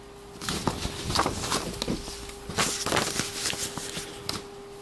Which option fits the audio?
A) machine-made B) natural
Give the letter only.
B